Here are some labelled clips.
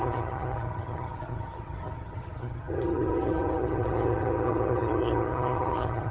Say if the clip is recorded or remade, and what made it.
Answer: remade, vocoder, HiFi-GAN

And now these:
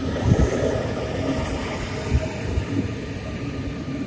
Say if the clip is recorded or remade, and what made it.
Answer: remade, vocoder, BigVGAN v2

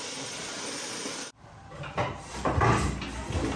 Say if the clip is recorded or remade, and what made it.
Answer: recorded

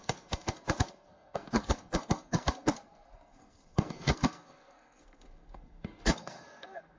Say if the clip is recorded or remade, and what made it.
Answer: remade, codec, SNAC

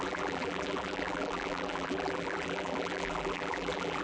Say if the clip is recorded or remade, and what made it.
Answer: remade, vocoder, BigVGAN v2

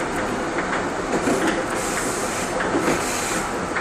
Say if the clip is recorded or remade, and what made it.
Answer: recorded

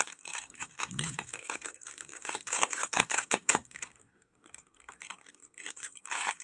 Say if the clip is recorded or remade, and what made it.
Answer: remade, codec, SNAC